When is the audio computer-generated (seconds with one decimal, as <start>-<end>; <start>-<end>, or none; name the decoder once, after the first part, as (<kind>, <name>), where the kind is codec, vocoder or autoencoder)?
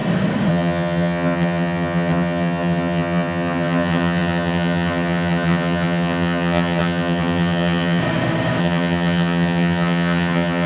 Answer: 0.5-8.0 (vocoder, HiFi-GAN); 8.6-10.7